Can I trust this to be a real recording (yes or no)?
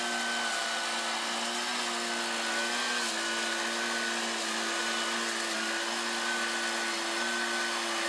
yes